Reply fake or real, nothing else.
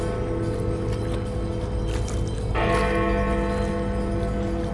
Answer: real